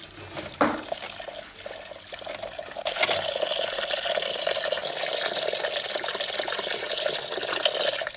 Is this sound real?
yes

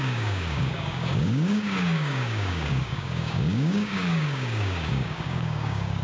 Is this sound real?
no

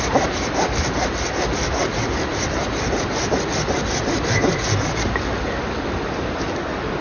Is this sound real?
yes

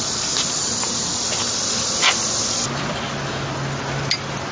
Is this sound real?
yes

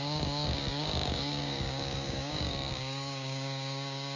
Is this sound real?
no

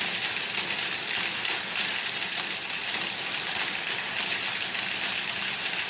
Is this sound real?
yes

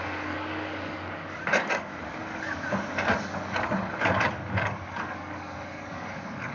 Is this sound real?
no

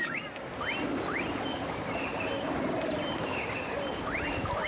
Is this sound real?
yes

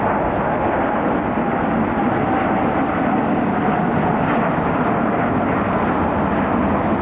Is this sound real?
yes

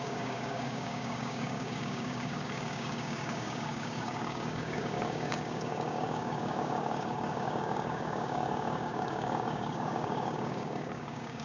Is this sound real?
no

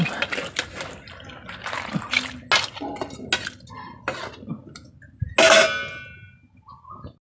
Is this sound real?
yes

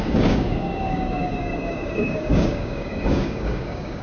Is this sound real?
no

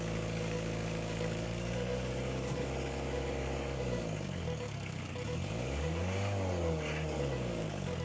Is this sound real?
no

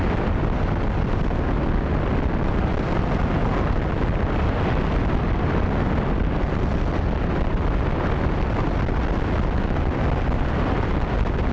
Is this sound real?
yes